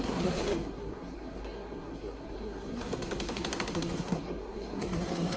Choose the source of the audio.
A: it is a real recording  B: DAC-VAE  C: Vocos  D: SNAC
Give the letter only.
D